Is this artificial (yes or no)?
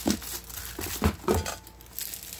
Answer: no